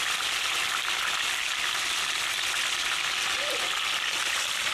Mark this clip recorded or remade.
recorded